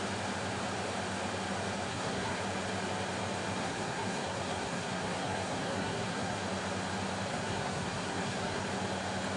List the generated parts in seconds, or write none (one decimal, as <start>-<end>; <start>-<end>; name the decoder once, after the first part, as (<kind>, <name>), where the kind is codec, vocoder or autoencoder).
1.9-2.4 (codec, SNAC); 3.6-6.4; 7.3-8.6